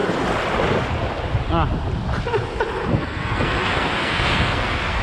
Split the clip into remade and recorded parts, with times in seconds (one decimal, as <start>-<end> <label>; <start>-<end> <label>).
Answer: 0.0-2.9 recorded; 2.9-5.0 remade